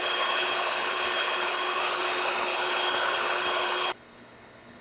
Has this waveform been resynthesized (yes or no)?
yes